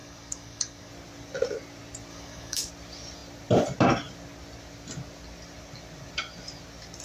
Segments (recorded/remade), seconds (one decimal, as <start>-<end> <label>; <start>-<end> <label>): 0.0-0.9 remade; 0.9-2.1 recorded; 2.1-2.7 remade; 2.7-7.0 recorded